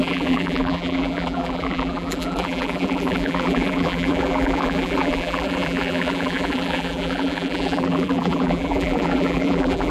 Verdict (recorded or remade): remade